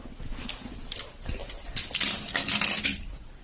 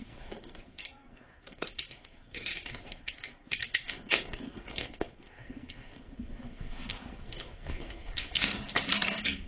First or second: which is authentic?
first